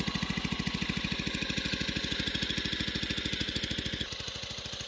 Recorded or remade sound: recorded